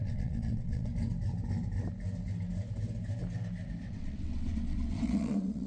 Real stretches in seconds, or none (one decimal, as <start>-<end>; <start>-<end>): 0.9-3.9